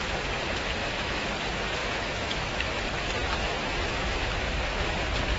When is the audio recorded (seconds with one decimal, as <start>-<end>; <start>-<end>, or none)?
0.0-0.8; 1.3-1.8; 2.7-3.2; 5.0-5.4

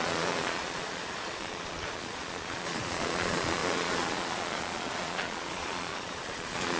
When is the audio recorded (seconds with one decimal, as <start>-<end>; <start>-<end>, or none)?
none